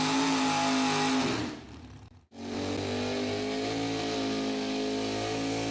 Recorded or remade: recorded